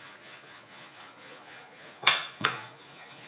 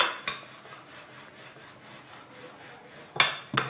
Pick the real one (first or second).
second